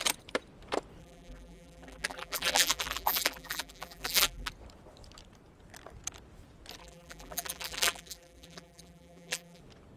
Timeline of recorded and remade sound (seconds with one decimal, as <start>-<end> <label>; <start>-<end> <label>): 0.0-1.0 recorded; 1.0-4.5 remade; 4.5-6.8 recorded; 6.8-9.6 remade; 9.6-10.0 recorded